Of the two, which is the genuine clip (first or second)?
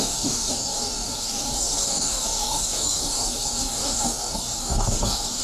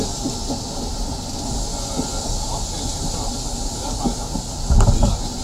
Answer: second